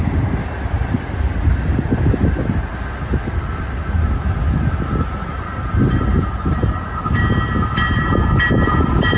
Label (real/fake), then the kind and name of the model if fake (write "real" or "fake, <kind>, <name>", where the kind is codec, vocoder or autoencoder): real